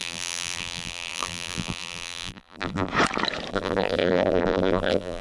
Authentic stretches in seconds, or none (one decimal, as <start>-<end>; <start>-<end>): 2.9-3.5